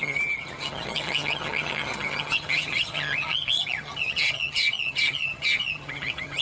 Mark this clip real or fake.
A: fake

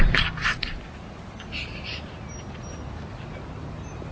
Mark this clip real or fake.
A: real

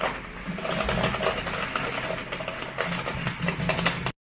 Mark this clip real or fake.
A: real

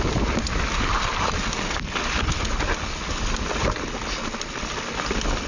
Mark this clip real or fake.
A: real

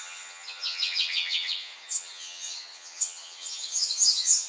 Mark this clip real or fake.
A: fake